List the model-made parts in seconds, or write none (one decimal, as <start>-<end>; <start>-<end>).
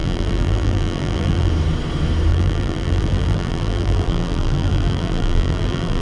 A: 0.0-1.5; 2.3-6.0